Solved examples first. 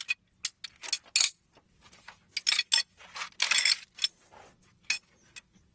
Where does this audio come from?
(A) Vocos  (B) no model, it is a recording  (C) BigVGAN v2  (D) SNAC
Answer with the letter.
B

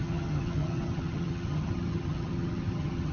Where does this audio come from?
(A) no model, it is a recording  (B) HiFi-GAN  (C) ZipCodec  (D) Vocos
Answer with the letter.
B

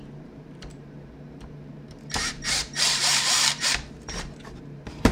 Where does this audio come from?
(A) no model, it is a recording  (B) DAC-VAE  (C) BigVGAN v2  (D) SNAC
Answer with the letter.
C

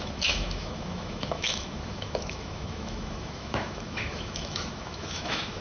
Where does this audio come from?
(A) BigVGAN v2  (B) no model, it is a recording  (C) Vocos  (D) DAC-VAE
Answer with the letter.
D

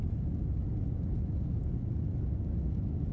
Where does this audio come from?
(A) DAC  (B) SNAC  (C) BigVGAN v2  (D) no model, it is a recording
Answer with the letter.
D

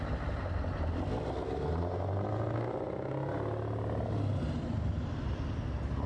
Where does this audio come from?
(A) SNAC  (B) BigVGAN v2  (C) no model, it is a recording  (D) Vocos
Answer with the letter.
C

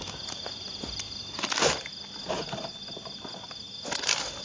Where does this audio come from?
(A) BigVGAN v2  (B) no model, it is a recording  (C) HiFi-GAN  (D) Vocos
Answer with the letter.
B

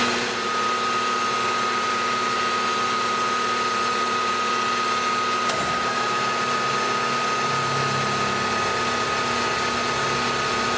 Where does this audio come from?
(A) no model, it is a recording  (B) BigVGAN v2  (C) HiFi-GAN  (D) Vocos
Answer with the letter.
A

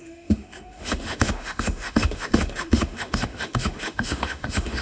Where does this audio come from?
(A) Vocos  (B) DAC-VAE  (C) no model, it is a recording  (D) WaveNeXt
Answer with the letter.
B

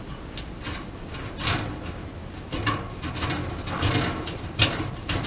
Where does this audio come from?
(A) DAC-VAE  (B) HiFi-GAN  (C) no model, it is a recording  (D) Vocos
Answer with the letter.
C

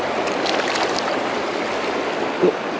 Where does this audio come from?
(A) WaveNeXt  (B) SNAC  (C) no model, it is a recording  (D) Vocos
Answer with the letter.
C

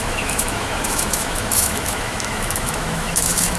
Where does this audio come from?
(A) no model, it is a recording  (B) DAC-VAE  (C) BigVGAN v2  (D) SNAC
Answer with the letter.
B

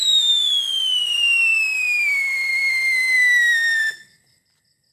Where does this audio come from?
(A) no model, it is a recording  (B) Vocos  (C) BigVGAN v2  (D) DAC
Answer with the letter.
A